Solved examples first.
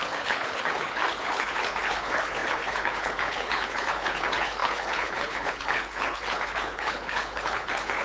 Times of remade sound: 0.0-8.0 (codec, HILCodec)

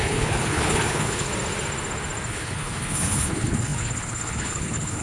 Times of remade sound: 0.0-1.3 (codec, HILCodec); 2.3-5.0

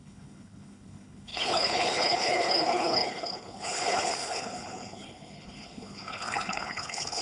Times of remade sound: 0.0-7.2 (codec, HILCodec)

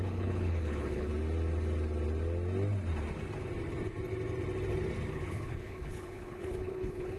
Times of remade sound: 0.0-1.1 (codec, HILCodec); 5.1-7.2

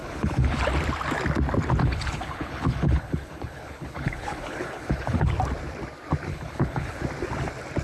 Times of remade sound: 0.0-0.6 (codec, HILCodec); 1.8-5.3; 6.3-7.0